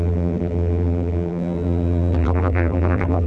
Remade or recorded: remade